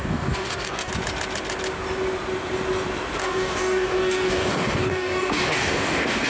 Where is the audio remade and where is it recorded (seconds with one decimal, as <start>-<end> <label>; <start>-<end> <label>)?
0.0-0.9 remade; 0.9-3.2 recorded; 3.2-6.3 remade